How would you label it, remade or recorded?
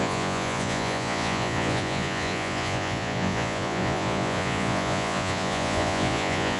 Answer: remade